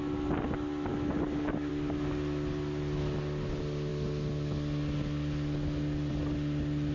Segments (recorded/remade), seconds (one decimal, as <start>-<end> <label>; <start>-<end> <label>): 0.0-6.9 recorded